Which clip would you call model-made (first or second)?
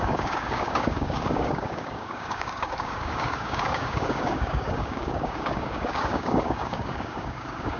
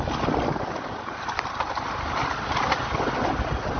first